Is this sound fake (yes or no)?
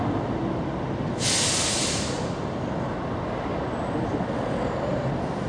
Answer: no